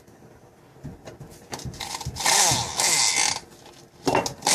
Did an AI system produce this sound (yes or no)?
no